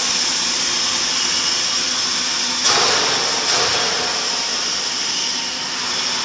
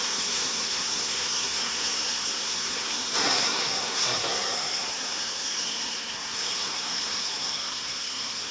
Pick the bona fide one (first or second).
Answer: first